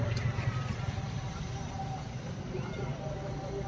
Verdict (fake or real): fake